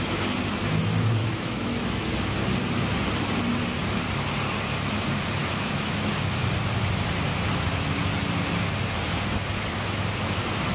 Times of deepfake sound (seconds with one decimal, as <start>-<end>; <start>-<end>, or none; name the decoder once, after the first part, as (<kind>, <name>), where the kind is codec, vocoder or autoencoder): 1.2-2.0 (autoencoder, DAC-VAE); 5.4-6.1